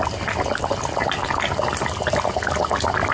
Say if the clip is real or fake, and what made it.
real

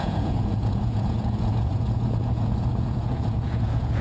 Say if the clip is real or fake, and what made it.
fake, vocoder, Vocos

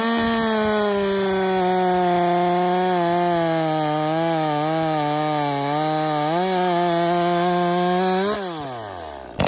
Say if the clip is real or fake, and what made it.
real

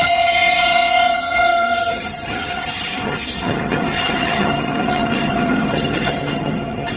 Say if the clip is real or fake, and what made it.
fake, vocoder, HiFi-GAN